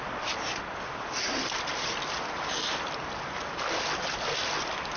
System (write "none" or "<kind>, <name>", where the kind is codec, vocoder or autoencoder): none